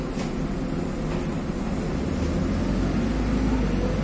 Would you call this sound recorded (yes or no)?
yes